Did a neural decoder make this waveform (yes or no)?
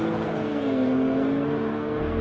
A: yes